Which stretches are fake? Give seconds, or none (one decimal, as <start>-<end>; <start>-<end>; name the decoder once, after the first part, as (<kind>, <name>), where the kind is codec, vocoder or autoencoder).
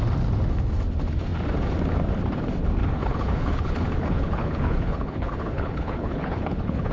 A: 2.8-6.9 (codec, HILCodec)